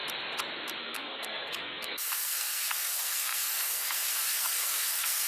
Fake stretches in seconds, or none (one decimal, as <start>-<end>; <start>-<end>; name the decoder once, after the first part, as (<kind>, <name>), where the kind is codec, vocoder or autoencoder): 0.8-5.3 (codec, SNAC)